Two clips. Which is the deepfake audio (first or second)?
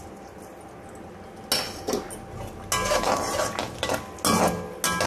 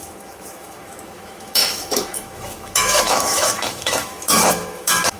second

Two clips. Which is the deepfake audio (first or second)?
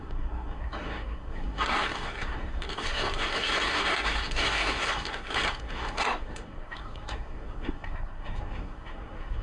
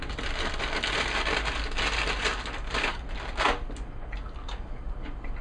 first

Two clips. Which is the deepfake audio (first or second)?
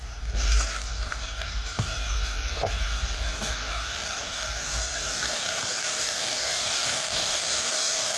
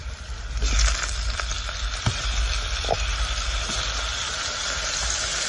first